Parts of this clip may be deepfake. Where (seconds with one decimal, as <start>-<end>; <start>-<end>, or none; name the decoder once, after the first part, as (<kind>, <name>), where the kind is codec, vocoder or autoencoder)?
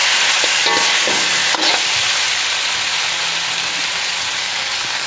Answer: 0.9-1.4 (codec, DAC); 4.4-5.1